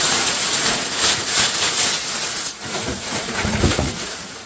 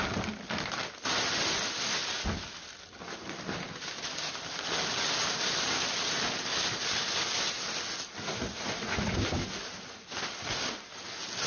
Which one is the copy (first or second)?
first